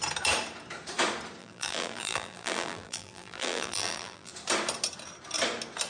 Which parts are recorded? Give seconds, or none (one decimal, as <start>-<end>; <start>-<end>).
0.0-1.4; 4.3-5.9